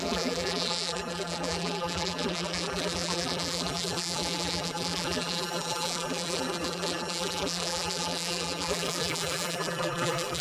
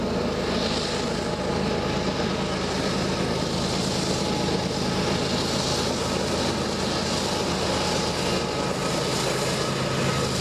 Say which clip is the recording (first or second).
second